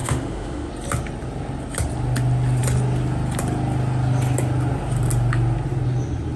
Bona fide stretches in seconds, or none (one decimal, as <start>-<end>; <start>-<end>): 0.7-6.4